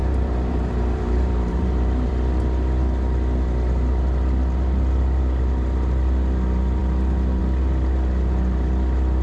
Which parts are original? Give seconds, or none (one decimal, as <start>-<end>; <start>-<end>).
2.1-9.2